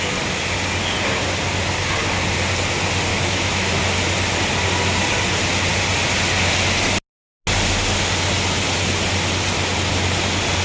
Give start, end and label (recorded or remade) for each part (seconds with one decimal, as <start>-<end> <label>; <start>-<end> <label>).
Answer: 0.0-3.1 recorded; 3.1-3.8 remade; 3.8-10.6 recorded